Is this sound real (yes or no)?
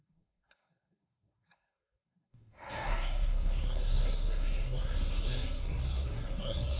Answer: no